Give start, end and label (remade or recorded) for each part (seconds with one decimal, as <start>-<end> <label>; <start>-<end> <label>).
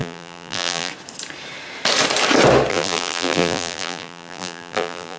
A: 0.0-0.9 remade; 0.9-2.7 recorded; 2.7-5.2 remade